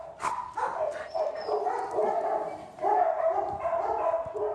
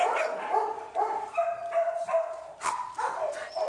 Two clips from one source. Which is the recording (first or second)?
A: first